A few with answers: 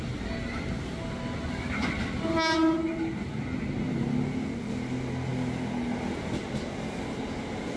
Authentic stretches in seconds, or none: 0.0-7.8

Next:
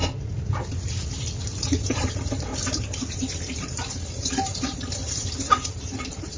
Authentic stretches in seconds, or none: 0.0-1.4; 2.5-3.1

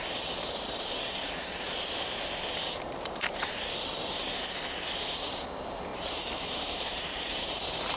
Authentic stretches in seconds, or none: 0.0-2.6; 3.6-5.9